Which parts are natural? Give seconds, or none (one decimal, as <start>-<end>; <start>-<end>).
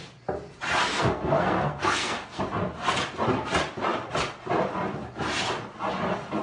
0.0-0.8; 2.4-6.4